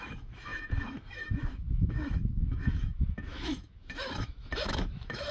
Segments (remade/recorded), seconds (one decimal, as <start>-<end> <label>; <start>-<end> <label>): 0.0-5.3 remade